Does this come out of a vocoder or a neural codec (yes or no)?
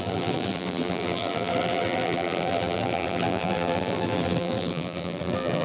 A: yes